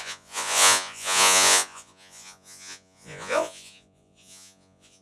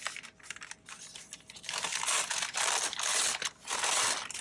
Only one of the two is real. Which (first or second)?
second